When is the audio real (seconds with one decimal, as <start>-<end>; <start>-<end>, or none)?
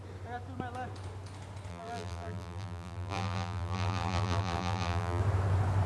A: 0.0-1.7; 5.2-5.9